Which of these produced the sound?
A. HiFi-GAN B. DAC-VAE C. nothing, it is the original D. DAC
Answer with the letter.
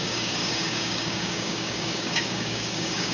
D